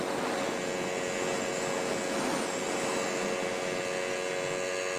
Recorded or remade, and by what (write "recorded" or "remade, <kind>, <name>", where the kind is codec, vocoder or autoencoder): recorded